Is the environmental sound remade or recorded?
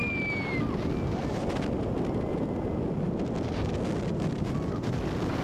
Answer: recorded